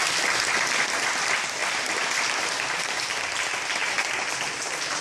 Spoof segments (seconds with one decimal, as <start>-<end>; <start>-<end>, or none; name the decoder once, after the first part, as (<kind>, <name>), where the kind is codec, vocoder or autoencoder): 1.6-2.2 (vocoder, BigVGAN v2)